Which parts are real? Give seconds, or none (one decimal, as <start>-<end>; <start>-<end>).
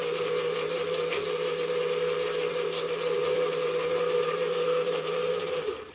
0.0-2.5